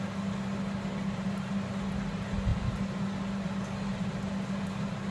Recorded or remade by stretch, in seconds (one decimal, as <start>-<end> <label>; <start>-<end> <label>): 0.0-5.1 recorded